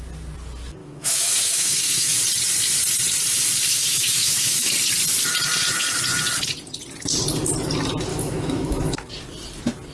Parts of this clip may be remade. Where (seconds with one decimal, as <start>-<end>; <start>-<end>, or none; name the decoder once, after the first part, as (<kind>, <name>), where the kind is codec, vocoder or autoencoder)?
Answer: 0.8-2.2 (autoencoder, DAC-VAE); 3.7-4.7; 8.1-9.1